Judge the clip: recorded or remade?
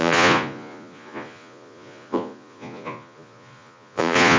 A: remade